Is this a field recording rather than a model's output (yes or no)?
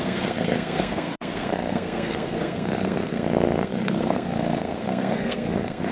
no